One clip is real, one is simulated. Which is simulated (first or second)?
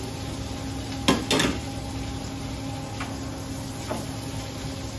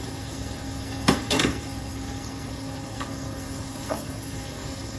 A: second